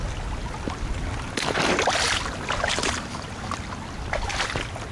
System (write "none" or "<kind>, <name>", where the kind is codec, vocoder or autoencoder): none